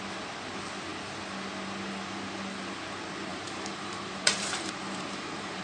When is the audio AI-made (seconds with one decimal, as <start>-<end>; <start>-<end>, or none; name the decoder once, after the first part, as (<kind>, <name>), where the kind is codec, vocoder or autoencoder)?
3.3-5.6 (vocoder, BigVGAN v2)